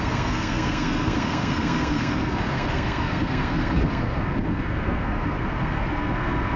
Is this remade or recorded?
remade